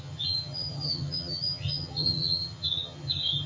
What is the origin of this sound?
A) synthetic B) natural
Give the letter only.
A